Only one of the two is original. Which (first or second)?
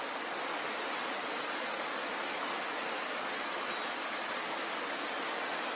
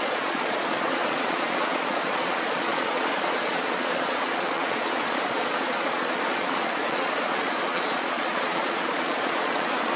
first